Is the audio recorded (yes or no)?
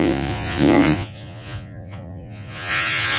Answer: no